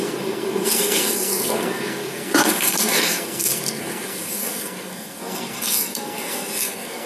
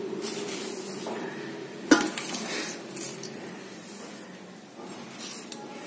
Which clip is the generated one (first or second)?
first